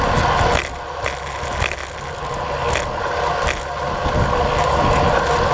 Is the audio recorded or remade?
recorded